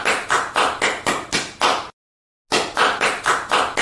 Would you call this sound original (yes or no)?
yes